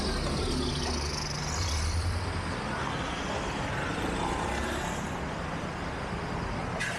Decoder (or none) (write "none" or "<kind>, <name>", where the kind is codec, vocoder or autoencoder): none